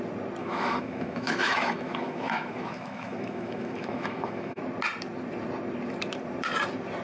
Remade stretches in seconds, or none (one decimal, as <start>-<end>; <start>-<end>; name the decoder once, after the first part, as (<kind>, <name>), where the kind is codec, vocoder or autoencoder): 0.4-4.6 (autoencoder, DAC-VAE)